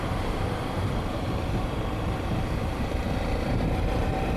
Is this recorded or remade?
remade